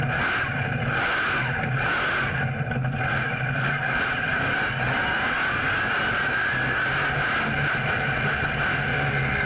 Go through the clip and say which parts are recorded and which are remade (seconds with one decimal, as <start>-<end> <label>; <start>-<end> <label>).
0.0-9.5 recorded